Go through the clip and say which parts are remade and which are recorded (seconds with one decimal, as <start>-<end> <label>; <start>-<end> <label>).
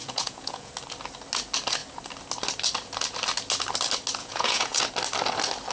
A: 0.0-0.7 remade; 0.7-4.2 recorded; 4.2-4.8 remade; 4.8-5.7 recorded